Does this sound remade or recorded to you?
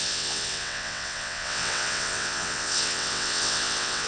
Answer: remade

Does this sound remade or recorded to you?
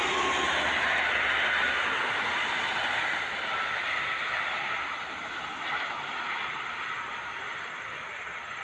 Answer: recorded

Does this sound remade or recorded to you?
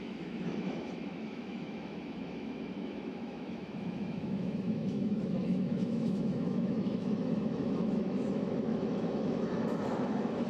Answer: remade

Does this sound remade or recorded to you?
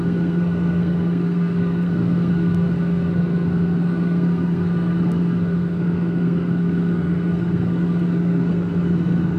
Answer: remade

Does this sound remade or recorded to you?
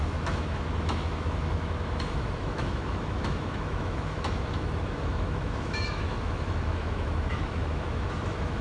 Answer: remade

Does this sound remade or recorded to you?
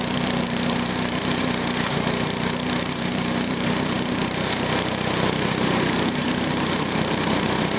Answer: remade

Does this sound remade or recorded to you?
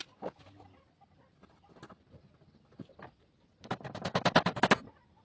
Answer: recorded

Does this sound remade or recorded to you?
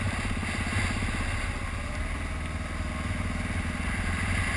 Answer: recorded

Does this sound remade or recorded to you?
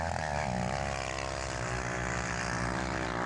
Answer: recorded